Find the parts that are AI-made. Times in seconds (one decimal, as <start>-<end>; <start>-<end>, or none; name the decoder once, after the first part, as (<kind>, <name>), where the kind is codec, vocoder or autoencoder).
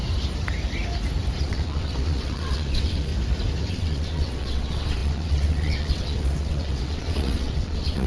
1.4-3.1 (vocoder, WaveNeXt); 3.7-8.1